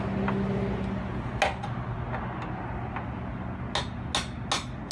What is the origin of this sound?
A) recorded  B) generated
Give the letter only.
A